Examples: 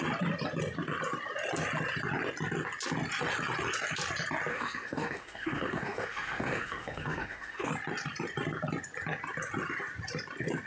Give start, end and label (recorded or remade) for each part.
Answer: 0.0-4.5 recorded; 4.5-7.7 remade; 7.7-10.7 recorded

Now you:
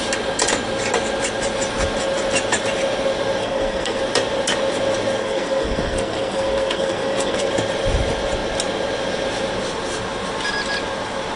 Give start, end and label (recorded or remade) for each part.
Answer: 0.0-3.4 recorded; 3.4-4.0 remade; 4.0-5.2 recorded; 5.2-7.5 remade; 7.5-11.4 recorded

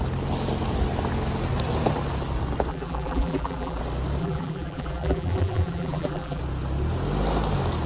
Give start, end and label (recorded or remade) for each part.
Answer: 0.0-2.7 recorded; 2.7-3.8 remade; 3.8-4.2 recorded; 4.2-6.4 remade; 6.4-7.9 recorded

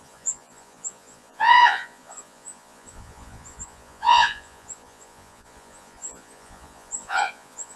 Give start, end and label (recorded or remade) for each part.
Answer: 0.0-7.8 remade

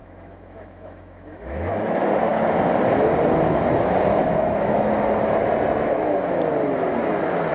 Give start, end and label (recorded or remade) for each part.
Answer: 0.0-1.7 remade; 1.7-4.2 recorded; 4.2-4.9 remade; 4.9-7.5 recorded

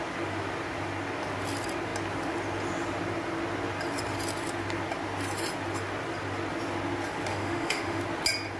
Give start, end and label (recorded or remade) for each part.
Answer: 0.0-7.3 recorded; 7.3-8.0 remade; 8.0-8.6 recorded

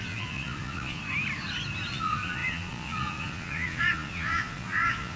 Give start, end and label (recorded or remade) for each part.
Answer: 0.0-1.0 remade; 1.0-1.9 recorded; 1.9-5.2 remade